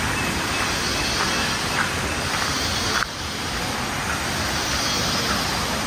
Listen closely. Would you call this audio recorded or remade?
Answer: recorded